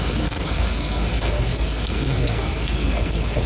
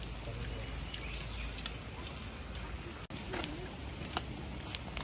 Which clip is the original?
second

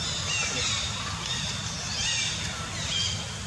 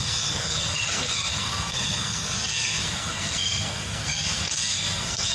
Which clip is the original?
first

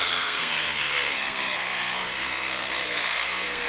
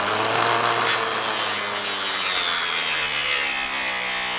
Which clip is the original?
second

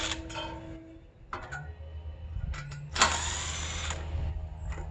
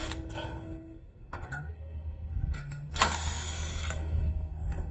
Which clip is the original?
first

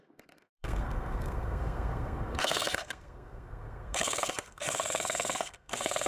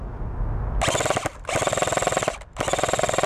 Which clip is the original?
second